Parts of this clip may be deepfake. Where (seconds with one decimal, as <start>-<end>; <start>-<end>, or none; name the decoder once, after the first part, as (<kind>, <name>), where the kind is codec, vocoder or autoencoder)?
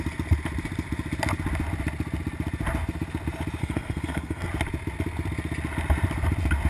3.6-4.5 (codec, SNAC)